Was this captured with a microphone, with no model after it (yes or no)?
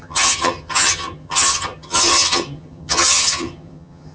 no